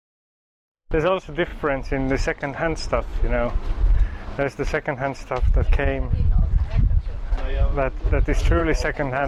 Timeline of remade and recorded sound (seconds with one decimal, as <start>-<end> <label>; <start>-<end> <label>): 0.0-1.5 remade; 1.5-2.2 recorded; 2.2-3.1 remade; 3.1-6.7 recorded; 6.7-7.6 remade; 7.6-8.6 recorded; 8.6-9.3 remade